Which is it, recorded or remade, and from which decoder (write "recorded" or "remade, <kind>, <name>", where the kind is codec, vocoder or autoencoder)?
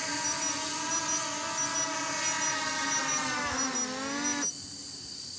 recorded